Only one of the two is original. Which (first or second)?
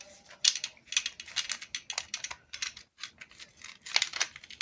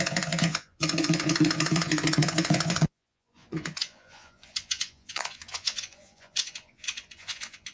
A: first